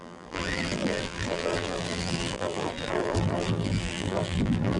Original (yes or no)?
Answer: no